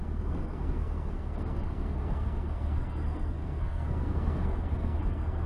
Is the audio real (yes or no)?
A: no